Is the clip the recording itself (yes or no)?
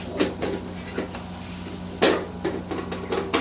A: yes